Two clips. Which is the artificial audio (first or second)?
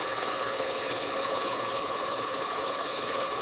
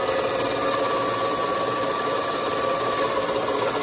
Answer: first